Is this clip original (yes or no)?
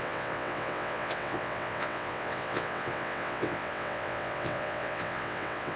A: no